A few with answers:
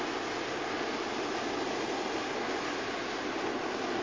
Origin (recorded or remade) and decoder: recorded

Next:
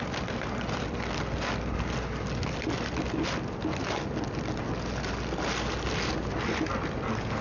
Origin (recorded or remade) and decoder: recorded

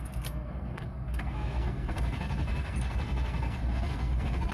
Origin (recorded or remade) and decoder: remade, codec, SNAC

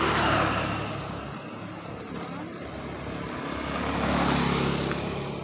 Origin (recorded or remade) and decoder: recorded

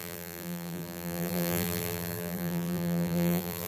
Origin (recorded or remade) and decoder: remade, vocoder, BigVGAN v2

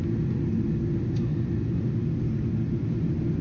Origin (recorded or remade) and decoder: recorded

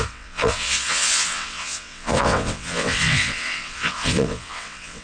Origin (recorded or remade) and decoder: remade, vocoder, WaveNeXt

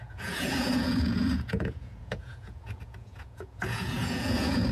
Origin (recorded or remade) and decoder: remade, vocoder, Vocos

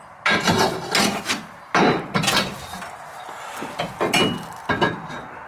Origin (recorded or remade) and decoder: recorded